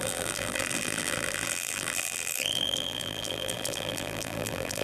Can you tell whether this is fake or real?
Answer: fake